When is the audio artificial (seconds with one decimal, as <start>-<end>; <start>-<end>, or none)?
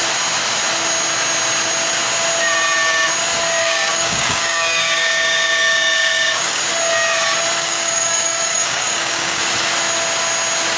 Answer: 3.6-6.6; 7.6-9.4